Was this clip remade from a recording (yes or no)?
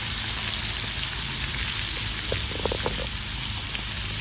no